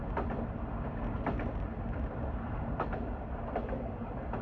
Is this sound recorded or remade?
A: recorded